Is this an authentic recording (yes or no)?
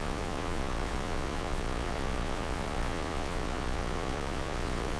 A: no